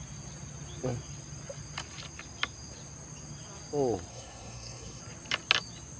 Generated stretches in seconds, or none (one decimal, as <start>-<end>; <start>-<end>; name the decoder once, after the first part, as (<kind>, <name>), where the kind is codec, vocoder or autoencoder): 4.1-5.0 (codec, SNAC)